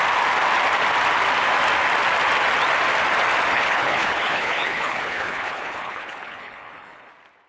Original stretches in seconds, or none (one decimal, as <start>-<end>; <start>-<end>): 0.0-3.5; 7.1-7.5